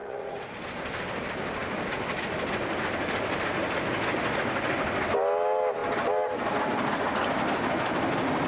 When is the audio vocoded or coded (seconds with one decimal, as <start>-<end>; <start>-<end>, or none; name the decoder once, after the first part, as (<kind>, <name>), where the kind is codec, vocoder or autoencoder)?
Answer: 0.0-0.5 (vocoder, Vocos)